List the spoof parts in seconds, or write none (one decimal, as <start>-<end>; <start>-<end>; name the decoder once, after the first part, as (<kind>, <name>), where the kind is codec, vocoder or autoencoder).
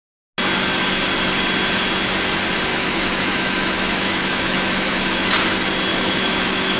2.7-5.3 (autoencoder, DAC-VAE); 5.9-6.8